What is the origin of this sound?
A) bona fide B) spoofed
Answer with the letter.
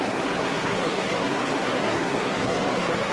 B